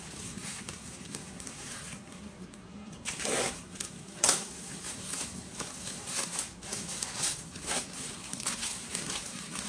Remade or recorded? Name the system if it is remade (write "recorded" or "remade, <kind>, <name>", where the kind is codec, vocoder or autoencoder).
remade, codec, SNAC